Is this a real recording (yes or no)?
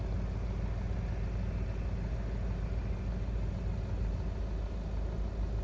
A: yes